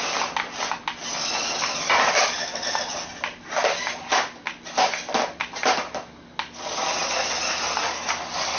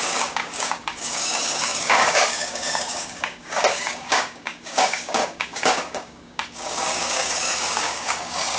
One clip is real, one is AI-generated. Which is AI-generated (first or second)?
second